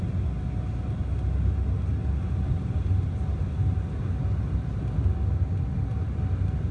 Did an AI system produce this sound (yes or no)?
no